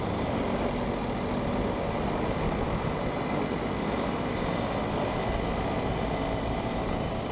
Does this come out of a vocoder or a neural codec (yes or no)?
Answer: no